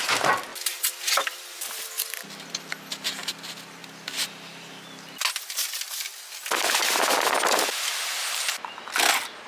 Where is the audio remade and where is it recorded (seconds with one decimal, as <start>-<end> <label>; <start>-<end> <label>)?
0.0-9.5 recorded